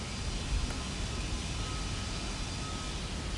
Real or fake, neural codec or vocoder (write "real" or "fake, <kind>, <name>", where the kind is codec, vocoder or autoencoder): real